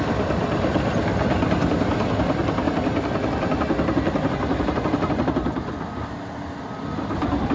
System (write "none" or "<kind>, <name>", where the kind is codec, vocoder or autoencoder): none